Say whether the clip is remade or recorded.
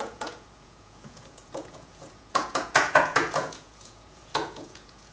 remade